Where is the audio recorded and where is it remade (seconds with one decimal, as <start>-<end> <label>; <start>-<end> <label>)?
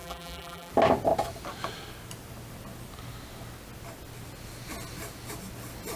0.0-0.7 remade; 0.7-6.0 recorded